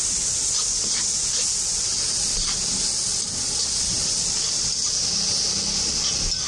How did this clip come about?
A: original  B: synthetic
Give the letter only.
A